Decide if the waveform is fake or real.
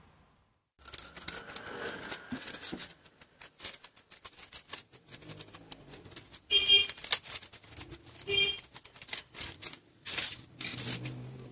real